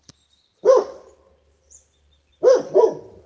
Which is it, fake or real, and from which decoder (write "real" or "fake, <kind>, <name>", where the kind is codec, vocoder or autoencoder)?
fake, vocoder, BigVGAN v2